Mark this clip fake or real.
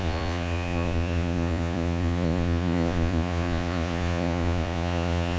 fake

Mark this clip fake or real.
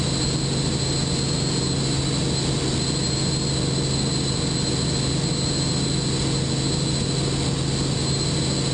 real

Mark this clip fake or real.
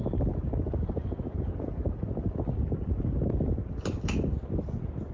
real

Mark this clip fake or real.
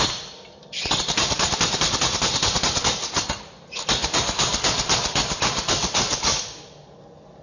real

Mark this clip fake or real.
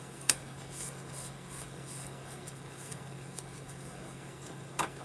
fake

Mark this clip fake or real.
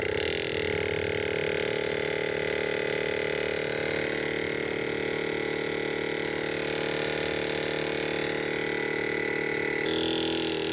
real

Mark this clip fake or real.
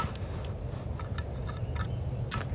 real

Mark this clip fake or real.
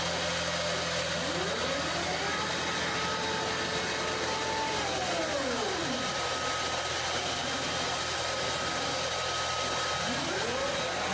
real